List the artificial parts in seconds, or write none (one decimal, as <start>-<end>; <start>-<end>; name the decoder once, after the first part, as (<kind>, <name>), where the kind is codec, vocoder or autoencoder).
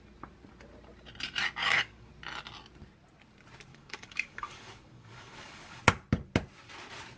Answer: 1.6-2.1 (codec, DAC); 3.7-5.8